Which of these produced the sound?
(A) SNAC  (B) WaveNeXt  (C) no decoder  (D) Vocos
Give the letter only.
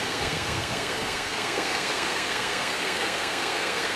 A